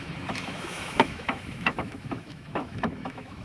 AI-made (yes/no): yes